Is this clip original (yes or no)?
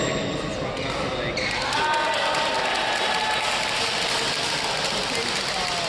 yes